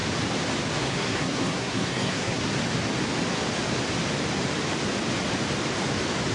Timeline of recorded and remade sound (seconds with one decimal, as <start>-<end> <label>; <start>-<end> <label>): 0.0-0.8 recorded; 0.8-2.5 remade; 2.5-6.3 recorded